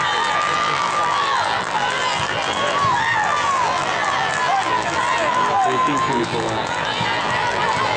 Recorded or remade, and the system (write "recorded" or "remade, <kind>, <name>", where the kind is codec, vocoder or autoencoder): remade, vocoder, BigVGAN v2